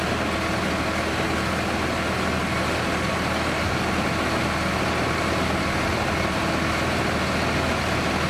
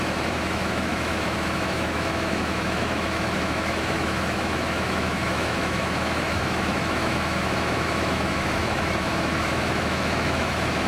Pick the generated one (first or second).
second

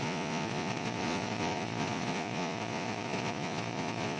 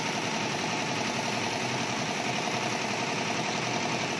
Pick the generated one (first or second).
first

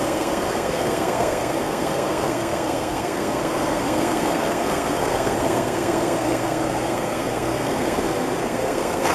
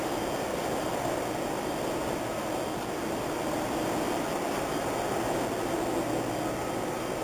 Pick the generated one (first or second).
first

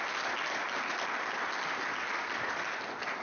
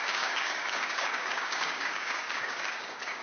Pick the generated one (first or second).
second